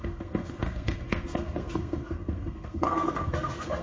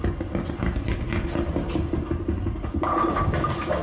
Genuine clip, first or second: second